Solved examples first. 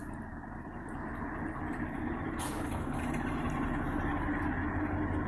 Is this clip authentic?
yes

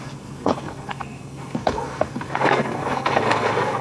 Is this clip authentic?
no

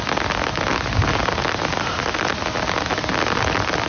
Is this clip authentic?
yes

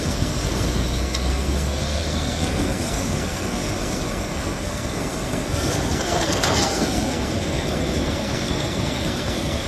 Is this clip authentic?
no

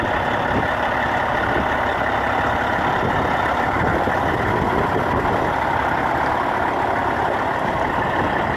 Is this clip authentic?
yes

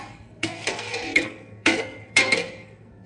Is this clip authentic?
no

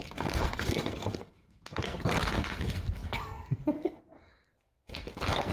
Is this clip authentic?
no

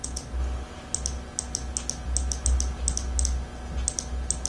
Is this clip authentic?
yes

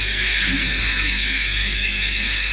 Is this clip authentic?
no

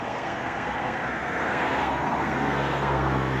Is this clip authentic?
no